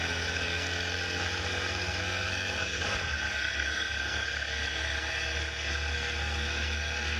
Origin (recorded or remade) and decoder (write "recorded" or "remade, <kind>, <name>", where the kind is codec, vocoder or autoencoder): remade, codec, SNAC